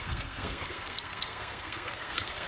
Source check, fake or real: fake